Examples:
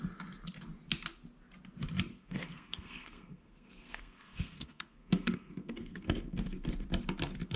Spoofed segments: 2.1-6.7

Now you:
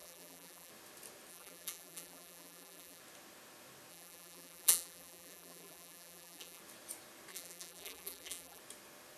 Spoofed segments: 0.0-0.7; 1.3-3.0; 3.9-6.6; 7.3-8.6

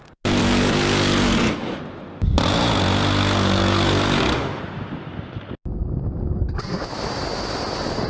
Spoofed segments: 0.4-1.8; 3.2-4.6

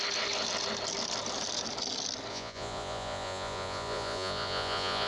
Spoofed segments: 2.3-5.1